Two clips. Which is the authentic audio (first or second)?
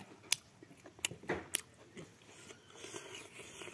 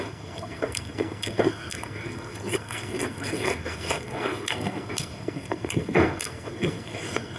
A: first